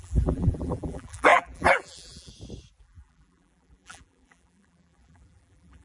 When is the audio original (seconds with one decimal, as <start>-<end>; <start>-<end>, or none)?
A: 2.3-2.8